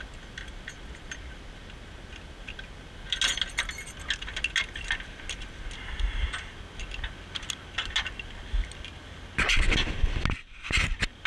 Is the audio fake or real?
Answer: real